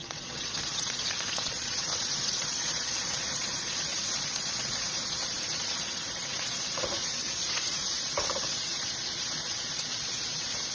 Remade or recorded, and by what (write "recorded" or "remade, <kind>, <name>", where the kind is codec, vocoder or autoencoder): remade, vocoder, Vocos